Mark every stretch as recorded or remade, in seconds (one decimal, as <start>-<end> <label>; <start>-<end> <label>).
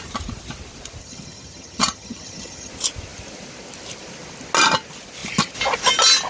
0.0-1.0 recorded; 1.0-2.7 remade; 2.7-6.3 recorded